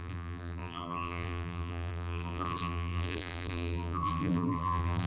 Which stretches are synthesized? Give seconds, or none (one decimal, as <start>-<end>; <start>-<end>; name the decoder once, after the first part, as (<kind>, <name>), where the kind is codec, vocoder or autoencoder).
0.0-5.1 (vocoder, BigVGAN v2)